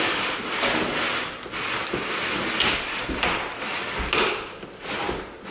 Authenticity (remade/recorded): recorded